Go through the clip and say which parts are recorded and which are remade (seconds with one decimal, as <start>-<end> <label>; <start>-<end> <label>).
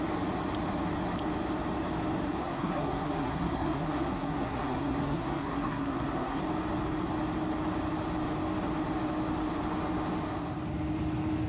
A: 0.0-2.4 recorded; 2.4-6.4 remade; 6.4-11.5 recorded